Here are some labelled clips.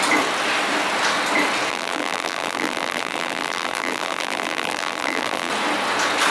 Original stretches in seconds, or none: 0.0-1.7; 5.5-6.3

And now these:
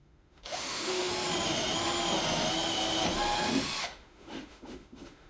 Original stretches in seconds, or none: 1.1-3.8

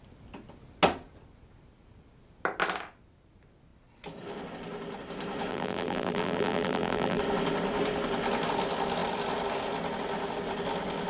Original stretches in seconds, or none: 0.0-5.5; 7.2-11.1

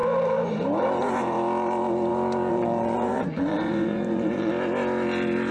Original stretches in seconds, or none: 0.0-2.5; 4.5-5.5

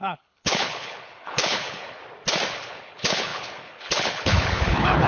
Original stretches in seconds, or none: 2.0-2.5

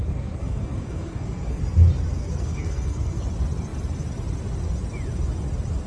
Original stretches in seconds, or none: 1.6-2.2; 3.2-5.9